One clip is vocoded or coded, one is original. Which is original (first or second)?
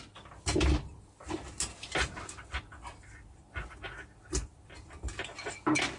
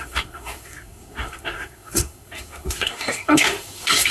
first